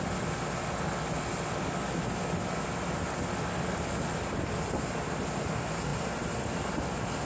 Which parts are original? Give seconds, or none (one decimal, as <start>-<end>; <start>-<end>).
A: 0.0-7.3

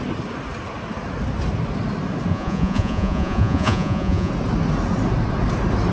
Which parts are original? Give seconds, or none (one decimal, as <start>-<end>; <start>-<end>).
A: 0.0-2.3; 4.3-5.9

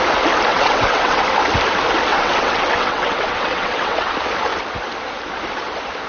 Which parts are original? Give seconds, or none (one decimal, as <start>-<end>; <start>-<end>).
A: 0.0-0.5; 1.2-2.1; 4.1-6.1

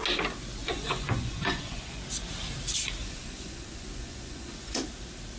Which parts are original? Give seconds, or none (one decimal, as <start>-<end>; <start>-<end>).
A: 0.0-0.6; 2.0-3.0; 4.8-5.4